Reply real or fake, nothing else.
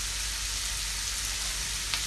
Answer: real